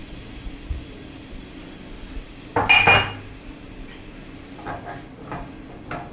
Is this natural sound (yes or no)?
yes